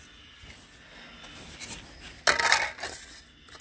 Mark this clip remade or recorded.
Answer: recorded